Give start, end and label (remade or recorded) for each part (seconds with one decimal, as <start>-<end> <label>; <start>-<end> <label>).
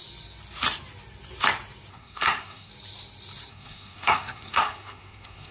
0.0-1.9 recorded; 1.9-2.7 remade; 2.7-3.5 recorded; 3.5-5.5 remade